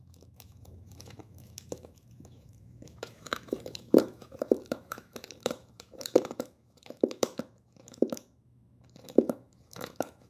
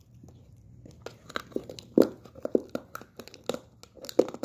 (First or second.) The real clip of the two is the second